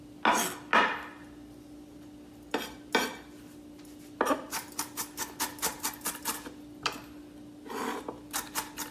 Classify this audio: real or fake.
real